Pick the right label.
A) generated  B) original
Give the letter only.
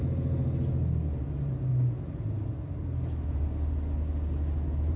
B